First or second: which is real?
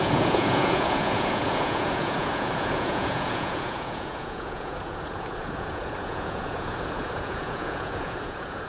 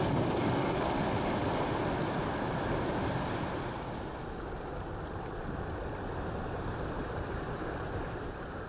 second